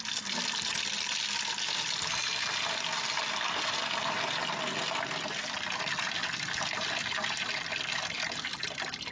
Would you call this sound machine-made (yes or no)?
no